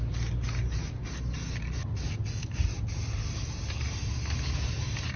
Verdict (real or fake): real